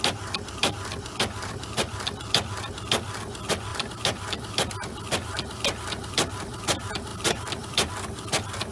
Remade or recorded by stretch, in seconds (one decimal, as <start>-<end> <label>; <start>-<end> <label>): 0.0-0.6 recorded; 0.6-2.6 remade; 2.6-3.7 recorded; 3.7-6.4 remade; 6.4-7.1 recorded; 7.1-7.9 remade; 7.9-8.7 recorded